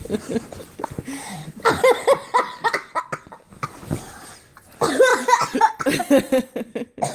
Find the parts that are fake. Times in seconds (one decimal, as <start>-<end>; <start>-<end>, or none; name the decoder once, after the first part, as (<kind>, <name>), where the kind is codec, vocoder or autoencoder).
none